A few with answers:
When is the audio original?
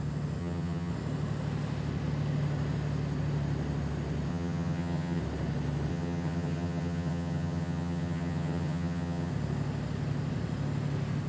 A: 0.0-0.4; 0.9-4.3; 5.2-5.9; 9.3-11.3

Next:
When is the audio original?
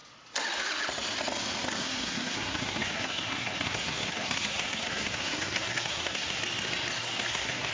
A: 0.0-1.8; 6.4-7.0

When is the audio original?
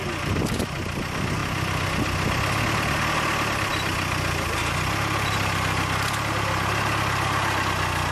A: 0.0-8.1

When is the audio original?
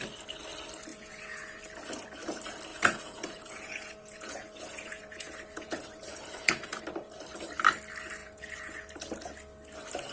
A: 0.0-0.9; 1.6-2.7; 6.8-8.2; 9.0-10.1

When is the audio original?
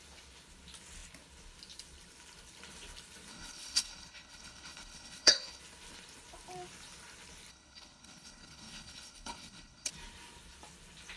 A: 0.0-3.3; 5.6-7.5; 9.9-11.2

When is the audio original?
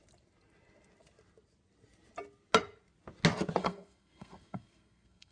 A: 0.0-3.6